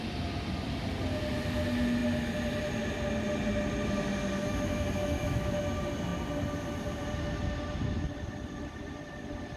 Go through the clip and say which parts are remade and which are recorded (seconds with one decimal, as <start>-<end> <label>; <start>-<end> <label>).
0.0-4.4 recorded; 4.4-5.6 remade; 5.6-9.6 recorded